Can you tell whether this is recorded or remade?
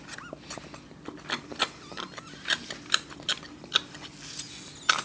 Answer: recorded